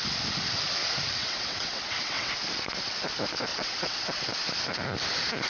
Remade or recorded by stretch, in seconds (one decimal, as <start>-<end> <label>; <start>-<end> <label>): 0.0-1.2 recorded; 1.2-2.3 remade; 2.3-3.5 recorded; 3.5-4.3 remade; 4.3-5.5 recorded